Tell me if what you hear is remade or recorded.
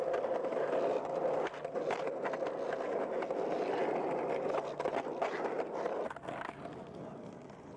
recorded